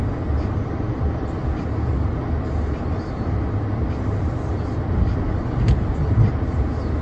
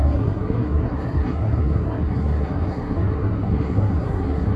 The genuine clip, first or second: first